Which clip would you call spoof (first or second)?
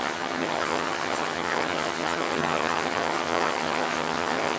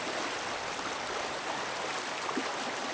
first